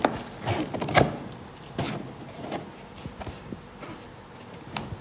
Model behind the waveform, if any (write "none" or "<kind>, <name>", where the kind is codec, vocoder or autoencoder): none